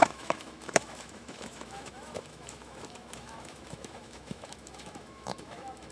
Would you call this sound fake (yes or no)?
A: yes